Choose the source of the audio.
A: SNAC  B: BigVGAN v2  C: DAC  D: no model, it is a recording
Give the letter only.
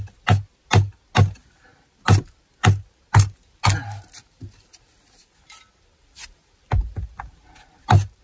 D